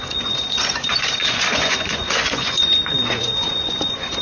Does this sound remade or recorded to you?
remade